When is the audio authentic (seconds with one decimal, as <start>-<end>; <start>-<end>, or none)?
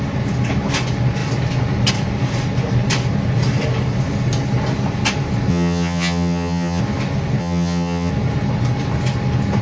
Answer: 0.0-5.5; 6.8-7.4; 8.1-9.6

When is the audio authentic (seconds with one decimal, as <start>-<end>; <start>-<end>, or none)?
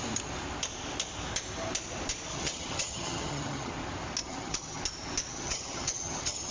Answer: 0.0-2.3; 3.7-4.2; 4.8-5.3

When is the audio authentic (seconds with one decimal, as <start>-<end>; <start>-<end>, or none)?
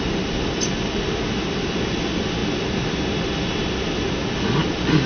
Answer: 0.0-5.1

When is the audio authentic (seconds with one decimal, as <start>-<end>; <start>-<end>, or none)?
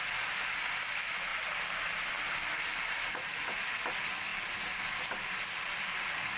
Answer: 0.0-6.4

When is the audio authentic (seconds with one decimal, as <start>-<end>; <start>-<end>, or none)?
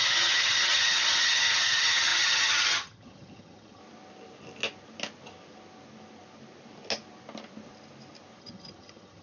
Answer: 3.8-8.4